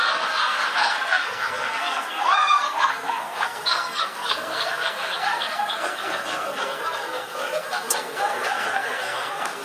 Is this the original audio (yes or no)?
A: no